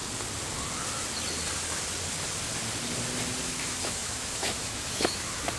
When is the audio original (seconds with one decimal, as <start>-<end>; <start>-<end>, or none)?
0.0-3.4